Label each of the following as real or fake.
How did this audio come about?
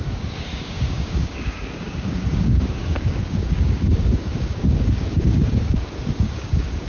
fake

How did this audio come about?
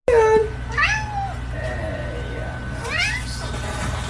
real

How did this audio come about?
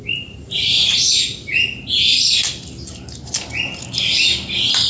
real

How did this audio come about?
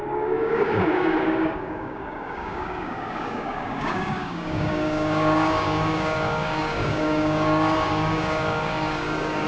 fake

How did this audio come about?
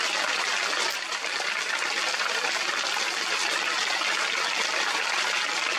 real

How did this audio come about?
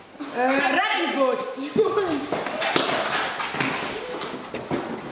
real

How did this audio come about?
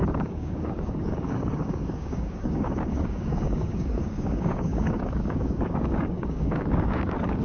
fake